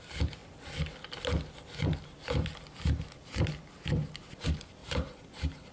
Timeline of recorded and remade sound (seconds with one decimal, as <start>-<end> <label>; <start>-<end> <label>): 0.0-5.7 recorded